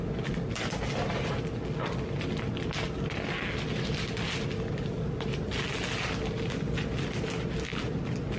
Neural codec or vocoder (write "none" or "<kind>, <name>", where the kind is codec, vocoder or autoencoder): none